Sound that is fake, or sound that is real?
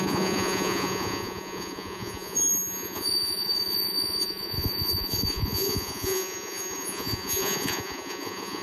fake